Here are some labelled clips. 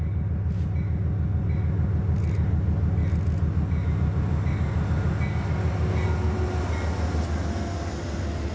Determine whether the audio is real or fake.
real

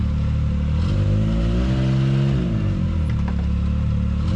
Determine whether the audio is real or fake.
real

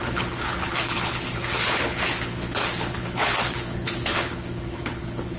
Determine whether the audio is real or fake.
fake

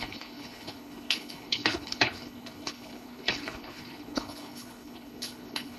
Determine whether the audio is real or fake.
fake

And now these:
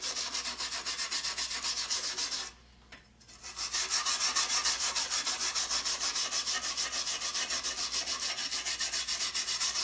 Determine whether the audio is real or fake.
real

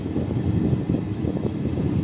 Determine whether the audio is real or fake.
real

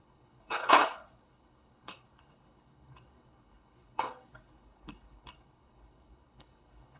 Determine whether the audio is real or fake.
fake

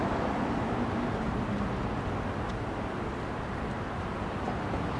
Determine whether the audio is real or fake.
real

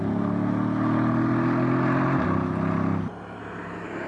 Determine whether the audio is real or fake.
real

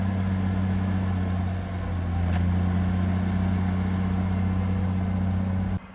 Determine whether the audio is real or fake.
real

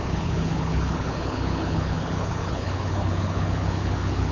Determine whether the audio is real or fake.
fake